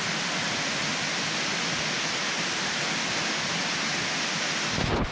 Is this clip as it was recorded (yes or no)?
yes